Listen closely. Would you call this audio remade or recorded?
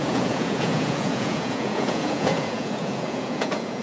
remade